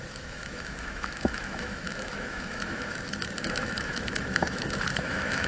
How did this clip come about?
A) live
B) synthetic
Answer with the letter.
B